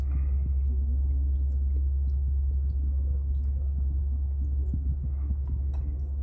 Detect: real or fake real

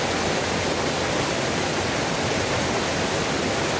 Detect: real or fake real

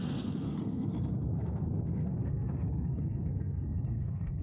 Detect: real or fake fake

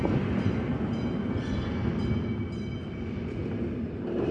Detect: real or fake real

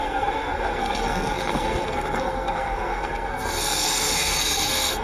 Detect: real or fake fake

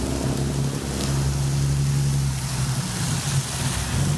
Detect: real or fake real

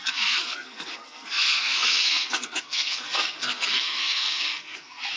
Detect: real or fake fake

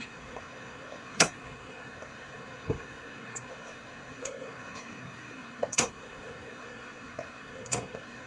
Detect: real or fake fake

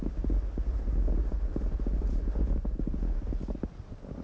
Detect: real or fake real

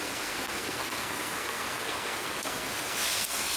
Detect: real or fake fake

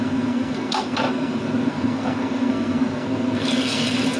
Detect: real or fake fake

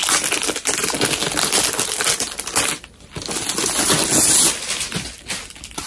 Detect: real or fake real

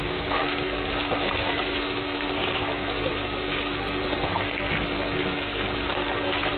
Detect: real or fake fake